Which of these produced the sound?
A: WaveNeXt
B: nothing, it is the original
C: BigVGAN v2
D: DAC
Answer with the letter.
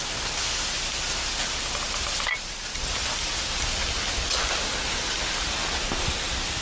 B